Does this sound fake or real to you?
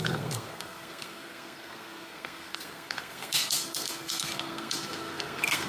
fake